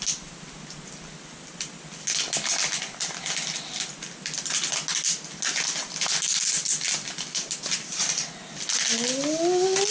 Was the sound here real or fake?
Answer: real